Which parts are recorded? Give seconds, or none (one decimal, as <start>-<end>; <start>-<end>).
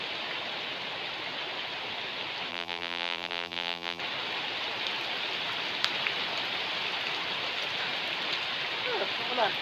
0.0-2.5; 4.0-9.6